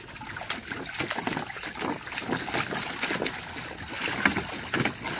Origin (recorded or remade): recorded